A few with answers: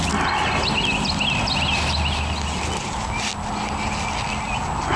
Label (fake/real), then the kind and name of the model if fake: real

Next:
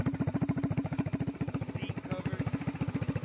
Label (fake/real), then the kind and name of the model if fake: real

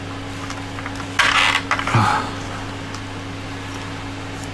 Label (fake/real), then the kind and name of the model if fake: real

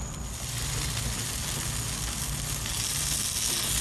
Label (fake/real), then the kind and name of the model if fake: real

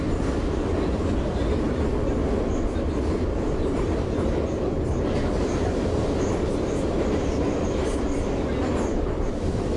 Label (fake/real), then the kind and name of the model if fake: real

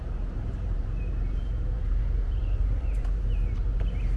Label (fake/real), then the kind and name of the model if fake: fake, vocoder, BigVGAN v2